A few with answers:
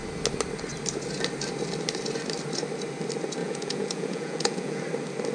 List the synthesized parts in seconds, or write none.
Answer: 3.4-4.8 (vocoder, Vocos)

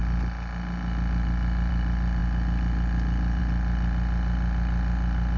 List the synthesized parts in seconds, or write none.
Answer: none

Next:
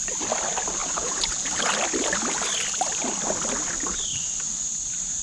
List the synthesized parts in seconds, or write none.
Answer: 0.8-1.7 (vocoder, Vocos)

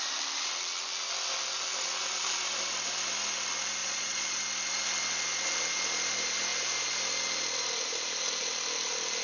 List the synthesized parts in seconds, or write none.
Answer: 3.8-4.4 (vocoder, Vocos)

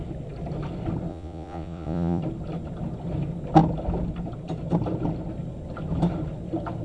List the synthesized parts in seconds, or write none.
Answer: 1.1-2.2 (vocoder, Vocos)